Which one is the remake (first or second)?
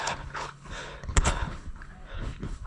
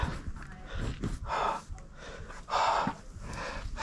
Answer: first